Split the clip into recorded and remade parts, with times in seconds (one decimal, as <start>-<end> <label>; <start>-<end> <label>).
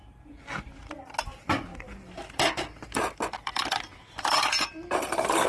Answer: 0.0-0.8 recorded; 0.8-1.7 remade; 1.7-2.3 recorded; 2.3-5.5 remade